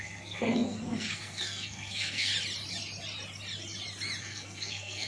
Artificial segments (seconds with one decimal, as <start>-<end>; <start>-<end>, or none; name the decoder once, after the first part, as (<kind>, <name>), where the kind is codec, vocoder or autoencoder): 0.0-2.3 (codec, SNAC); 4.2-5.1